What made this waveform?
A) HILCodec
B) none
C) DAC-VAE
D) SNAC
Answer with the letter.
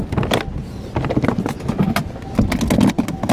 B